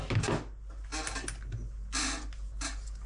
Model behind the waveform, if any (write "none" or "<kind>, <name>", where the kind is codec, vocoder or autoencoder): none